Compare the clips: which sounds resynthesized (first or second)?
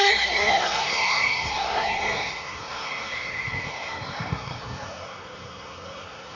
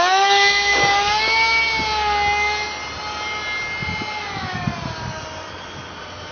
first